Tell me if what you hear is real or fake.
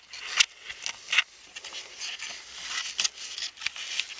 real